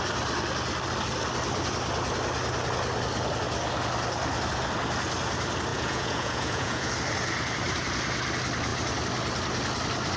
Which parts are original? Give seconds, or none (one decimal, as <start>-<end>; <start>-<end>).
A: 0.0-5.7; 6.9-10.2